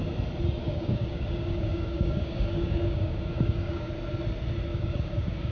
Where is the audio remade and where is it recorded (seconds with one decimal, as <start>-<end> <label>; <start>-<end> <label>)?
0.0-0.6 recorded; 0.6-3.9 remade; 3.9-4.7 recorded; 4.7-5.5 remade